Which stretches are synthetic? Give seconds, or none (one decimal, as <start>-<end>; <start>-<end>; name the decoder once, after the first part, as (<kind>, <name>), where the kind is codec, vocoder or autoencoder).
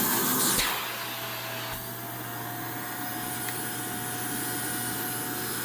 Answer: none